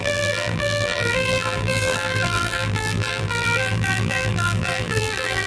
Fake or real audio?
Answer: fake